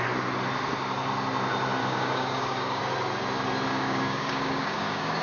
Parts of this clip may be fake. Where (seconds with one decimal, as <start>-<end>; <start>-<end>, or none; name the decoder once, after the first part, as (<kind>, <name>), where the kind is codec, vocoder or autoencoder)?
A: 1.8-2.8 (codec, DAC); 3.7-5.2